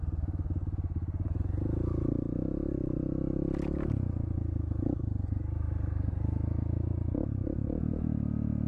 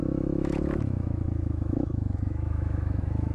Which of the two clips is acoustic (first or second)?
first